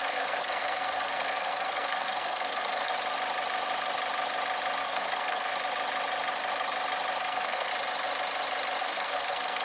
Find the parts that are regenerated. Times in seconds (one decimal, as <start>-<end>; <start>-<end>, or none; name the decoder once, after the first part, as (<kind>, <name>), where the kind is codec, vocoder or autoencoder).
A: 0.0-2.9 (codec, SNAC); 4.8-5.5; 7.2-7.7; 8.8-9.6